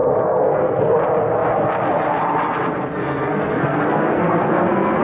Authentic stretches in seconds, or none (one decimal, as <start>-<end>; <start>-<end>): 1.0-3.0